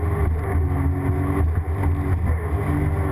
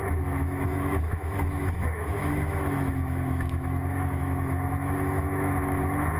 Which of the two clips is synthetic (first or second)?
second